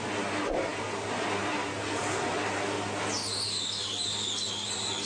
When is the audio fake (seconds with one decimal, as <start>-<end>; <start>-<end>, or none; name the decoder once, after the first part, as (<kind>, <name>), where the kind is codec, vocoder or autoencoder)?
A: none